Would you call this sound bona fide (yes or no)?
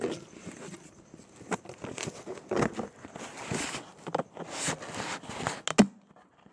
yes